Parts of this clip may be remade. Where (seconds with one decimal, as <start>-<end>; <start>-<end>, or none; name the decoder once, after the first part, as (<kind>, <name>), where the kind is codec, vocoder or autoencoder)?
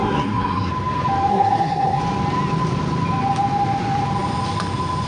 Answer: 0.0-0.7 (codec, SNAC); 1.3-2.0